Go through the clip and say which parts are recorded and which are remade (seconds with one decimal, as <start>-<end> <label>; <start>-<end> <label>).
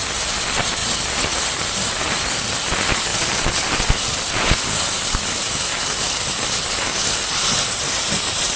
0.0-8.6 recorded